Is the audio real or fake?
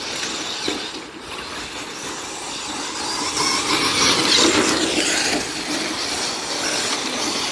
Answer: real